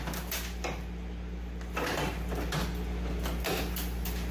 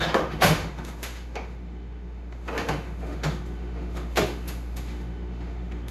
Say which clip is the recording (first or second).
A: first